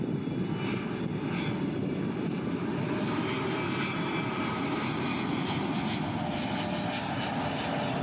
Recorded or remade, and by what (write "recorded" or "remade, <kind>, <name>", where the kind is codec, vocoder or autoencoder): recorded